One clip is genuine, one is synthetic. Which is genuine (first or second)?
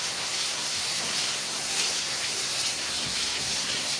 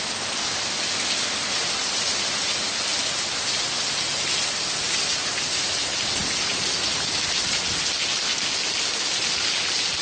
second